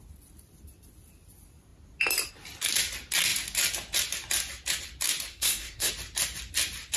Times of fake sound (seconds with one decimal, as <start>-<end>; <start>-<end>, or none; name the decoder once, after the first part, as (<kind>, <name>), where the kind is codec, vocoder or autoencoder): 5.3-5.9 (codec, SNAC)